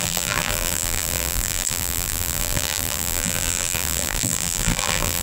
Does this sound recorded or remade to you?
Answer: remade